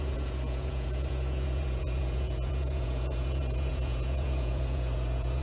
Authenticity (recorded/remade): remade